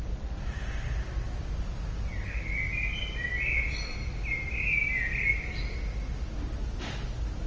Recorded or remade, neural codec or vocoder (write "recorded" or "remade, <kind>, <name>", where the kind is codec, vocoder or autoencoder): recorded